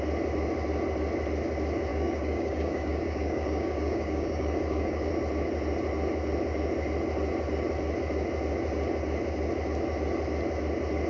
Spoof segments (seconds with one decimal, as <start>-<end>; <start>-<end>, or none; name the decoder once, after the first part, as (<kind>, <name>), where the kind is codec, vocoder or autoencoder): 1.9-5.1 (codec, DAC)